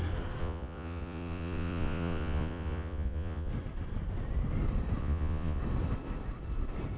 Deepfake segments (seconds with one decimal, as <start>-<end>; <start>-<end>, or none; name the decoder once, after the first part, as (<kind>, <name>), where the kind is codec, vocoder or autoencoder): 0.4-3.5 (vocoder, Vocos); 5.0-5.6